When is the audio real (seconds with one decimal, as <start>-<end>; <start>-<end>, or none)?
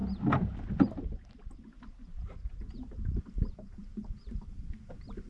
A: 0.0-3.2